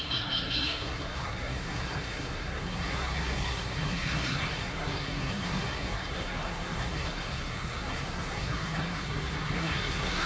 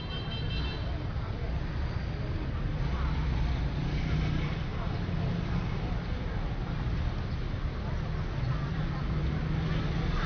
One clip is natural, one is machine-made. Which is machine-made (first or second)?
first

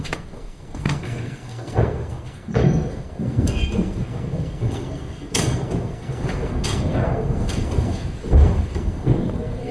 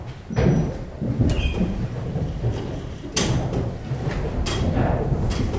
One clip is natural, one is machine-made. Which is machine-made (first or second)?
first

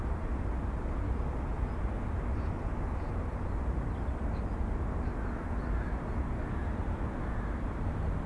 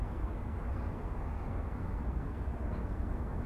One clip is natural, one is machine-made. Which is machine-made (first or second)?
second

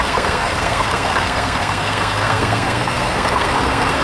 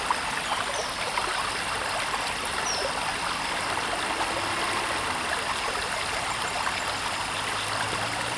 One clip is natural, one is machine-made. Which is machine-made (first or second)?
first